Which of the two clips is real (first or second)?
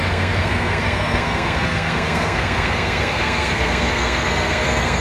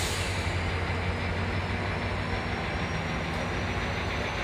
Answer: second